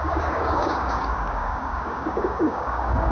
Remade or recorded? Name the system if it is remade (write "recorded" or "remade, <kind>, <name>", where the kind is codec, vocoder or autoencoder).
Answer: remade, codec, DAC